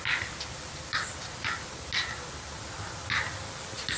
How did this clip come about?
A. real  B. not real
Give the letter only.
A